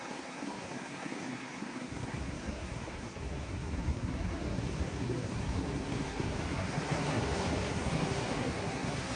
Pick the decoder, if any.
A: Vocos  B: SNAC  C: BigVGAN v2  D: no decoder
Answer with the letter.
B